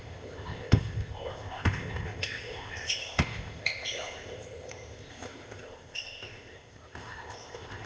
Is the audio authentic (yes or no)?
no